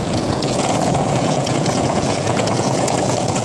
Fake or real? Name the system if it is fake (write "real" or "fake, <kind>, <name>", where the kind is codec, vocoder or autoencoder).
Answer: fake, vocoder, Vocos